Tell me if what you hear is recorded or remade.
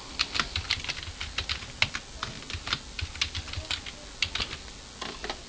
recorded